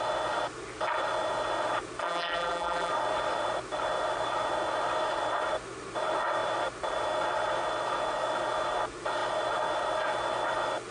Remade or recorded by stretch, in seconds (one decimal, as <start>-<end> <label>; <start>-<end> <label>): 0.0-2.0 recorded; 2.0-2.9 remade; 2.9-10.9 recorded